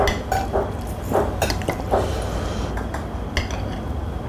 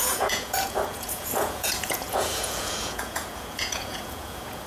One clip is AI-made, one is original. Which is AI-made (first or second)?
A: second